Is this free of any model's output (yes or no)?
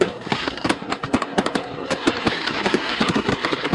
no